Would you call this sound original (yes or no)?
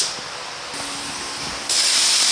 yes